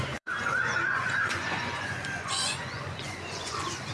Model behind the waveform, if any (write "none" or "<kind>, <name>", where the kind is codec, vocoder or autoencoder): vocoder, Vocos